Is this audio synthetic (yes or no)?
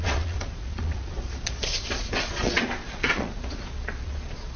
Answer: yes